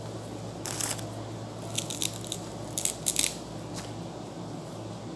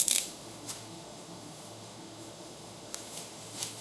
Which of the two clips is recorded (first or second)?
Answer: first